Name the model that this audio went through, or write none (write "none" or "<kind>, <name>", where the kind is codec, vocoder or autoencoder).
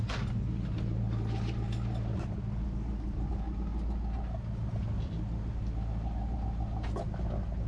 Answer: none